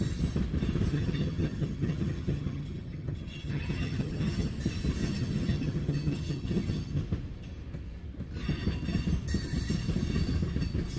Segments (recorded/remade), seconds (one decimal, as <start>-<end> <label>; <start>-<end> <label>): 0.0-0.9 recorded; 0.9-4.5 remade; 4.5-5.0 recorded; 5.0-7.0 remade; 7.0-11.0 recorded